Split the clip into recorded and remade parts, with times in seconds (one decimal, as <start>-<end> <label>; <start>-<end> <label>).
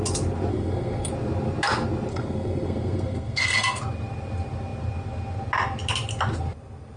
0.0-0.5 recorded; 0.5-1.1 remade; 1.1-2.1 recorded; 2.1-3.8 remade; 3.8-7.0 recorded